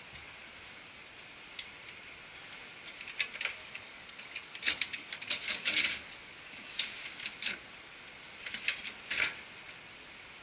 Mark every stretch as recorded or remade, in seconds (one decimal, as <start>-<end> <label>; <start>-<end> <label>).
0.0-3.6 recorded; 3.6-5.9 remade; 5.9-10.4 recorded